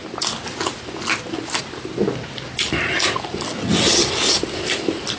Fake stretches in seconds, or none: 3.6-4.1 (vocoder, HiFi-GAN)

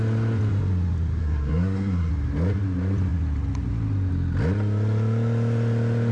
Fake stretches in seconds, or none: 1.2-2.1 (codec, SNAC)

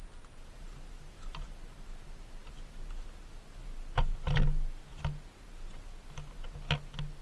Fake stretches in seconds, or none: none

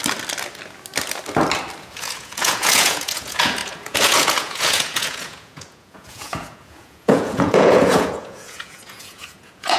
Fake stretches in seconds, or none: 1.8-9.8 (vocoder, Vocos)

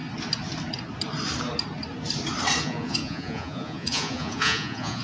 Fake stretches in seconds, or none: 2.6-5.0 (vocoder, Vocos)

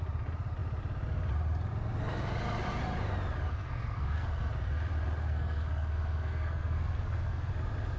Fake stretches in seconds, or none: 3.5-4.5 (codec, SNAC); 5.2-7.5

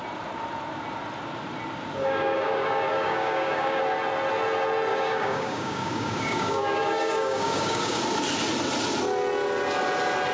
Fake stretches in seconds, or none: 2.0-3.8 (codec, DAC); 4.9-8.0